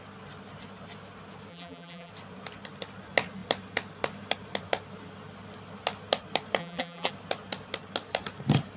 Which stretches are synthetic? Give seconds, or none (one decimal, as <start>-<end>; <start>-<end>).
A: 1.5-2.1; 6.6-7.1